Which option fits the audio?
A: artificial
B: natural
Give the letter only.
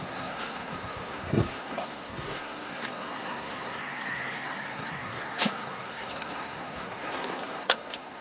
A